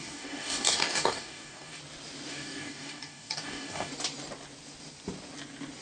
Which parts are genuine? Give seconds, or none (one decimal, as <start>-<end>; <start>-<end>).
1.8-2.3; 3.9-5.8